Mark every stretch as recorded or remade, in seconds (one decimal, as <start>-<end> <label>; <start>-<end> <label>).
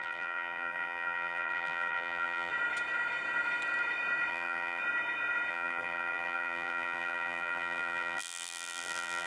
0.0-2.5 remade; 2.5-4.3 recorded; 4.3-4.8 remade; 4.8-5.5 recorded; 5.5-9.3 remade